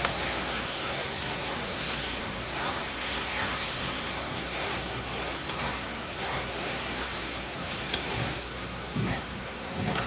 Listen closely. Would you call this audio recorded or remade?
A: remade